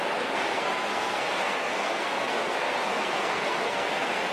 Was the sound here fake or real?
fake